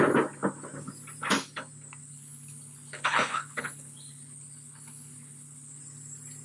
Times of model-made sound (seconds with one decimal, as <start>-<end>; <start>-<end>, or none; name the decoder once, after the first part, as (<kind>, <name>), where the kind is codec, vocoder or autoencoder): 2.0-5.8 (codec, HILCodec)